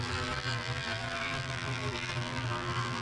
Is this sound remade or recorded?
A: remade